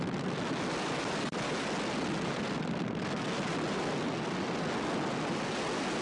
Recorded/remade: recorded